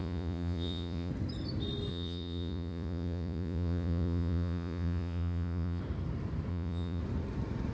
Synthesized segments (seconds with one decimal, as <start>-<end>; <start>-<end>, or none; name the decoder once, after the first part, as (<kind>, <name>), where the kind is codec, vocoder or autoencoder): 0.0-1.1 (vocoder, Vocos); 1.9-5.8; 6.5-7.0